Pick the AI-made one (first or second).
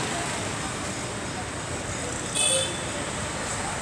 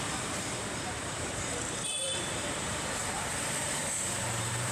second